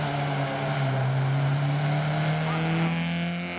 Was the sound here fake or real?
real